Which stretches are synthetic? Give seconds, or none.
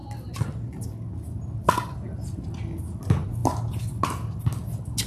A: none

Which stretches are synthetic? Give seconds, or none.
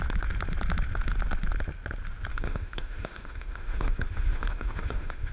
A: 2.3-5.3 (autoencoder, DAC-VAE)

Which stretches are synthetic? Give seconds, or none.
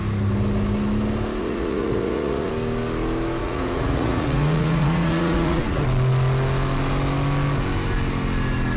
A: 1.4-2.5 (vocoder, Vocos); 3.4-5.8